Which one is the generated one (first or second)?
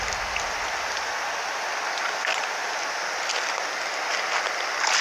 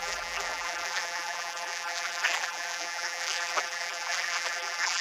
second